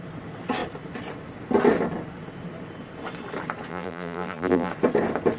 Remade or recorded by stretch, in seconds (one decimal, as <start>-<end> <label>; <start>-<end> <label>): 0.0-3.7 recorded; 3.7-4.7 remade; 4.7-5.4 recorded